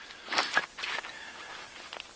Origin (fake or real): real